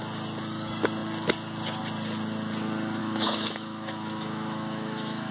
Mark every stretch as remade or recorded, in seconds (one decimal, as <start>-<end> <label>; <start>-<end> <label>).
0.0-3.0 recorded; 3.0-5.3 remade